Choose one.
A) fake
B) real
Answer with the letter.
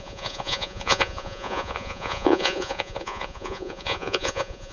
A